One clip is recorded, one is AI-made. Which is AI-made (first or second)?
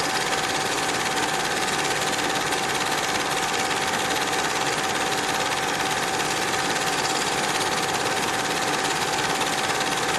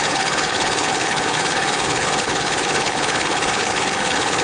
second